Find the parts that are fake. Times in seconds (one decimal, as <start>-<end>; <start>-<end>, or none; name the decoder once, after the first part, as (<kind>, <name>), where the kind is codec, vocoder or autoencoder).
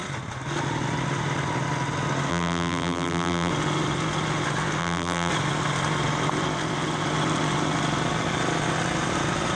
2.3-3.5 (vocoder, BigVGAN v2); 4.8-5.3